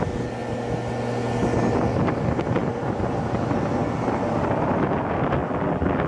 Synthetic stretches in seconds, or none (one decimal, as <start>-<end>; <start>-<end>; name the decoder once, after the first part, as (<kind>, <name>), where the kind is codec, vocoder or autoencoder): 5.4-6.1 (vocoder, BigVGAN v2)